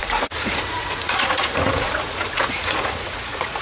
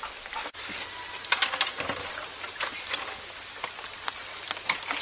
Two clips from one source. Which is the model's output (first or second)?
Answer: first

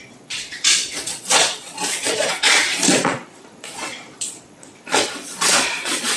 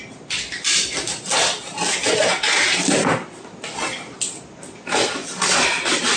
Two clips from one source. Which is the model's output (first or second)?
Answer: first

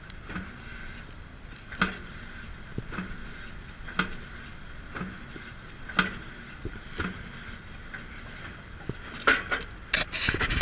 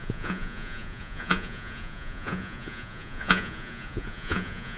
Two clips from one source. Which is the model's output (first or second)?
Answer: second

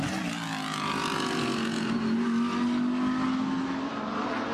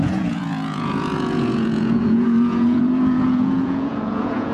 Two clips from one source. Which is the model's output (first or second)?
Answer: second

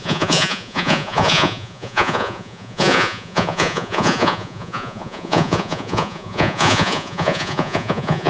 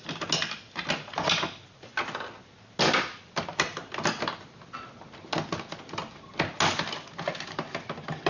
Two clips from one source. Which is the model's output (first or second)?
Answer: first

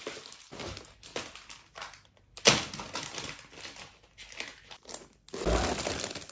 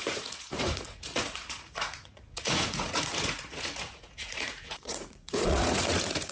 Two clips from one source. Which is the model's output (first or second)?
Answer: second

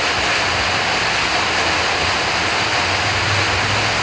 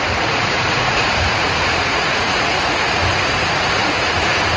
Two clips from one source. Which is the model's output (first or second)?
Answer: second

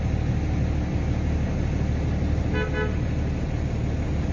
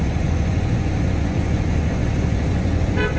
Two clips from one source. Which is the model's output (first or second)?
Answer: second